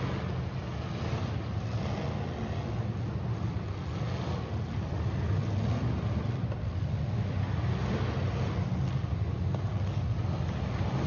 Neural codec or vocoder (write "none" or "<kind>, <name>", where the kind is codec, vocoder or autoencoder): none